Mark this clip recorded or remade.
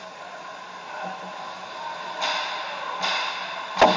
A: recorded